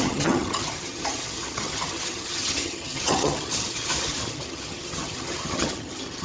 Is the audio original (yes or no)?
no